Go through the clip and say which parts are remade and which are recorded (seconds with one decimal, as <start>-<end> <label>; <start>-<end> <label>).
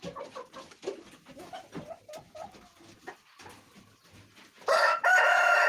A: 0.0-5.7 recorded